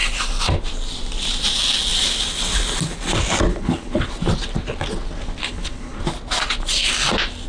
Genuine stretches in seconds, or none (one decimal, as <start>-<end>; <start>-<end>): 0.0-3.5; 4.1-5.4; 6.0-7.5